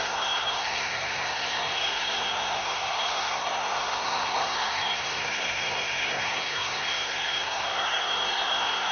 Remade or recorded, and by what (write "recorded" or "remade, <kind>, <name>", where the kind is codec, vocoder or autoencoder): remade, codec, SNAC